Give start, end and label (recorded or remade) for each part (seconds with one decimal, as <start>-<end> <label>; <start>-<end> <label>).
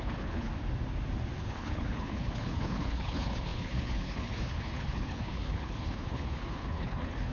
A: 0.0-0.5 remade; 0.5-1.4 recorded; 1.4-7.3 remade